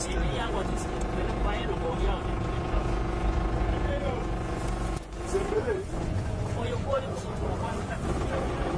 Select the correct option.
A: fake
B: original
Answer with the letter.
A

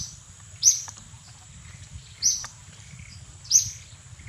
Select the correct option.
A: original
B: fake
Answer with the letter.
B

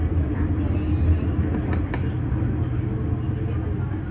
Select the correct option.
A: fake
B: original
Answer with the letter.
B